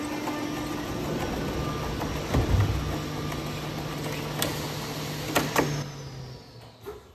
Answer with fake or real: real